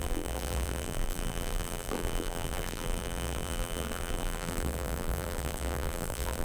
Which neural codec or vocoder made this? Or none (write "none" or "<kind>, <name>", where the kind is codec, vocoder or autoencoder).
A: vocoder, BigVGAN v2